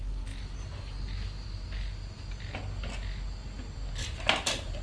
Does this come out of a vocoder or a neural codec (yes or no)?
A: no